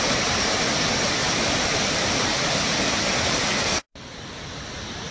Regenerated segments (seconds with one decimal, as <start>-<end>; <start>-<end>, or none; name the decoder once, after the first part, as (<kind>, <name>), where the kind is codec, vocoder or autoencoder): none